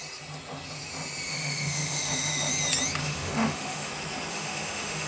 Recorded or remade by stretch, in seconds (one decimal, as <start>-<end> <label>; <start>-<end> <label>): 0.0-1.3 recorded; 1.3-2.5 remade; 2.5-3.0 recorded; 3.0-3.9 remade; 3.9-4.3 recorded; 4.3-5.1 remade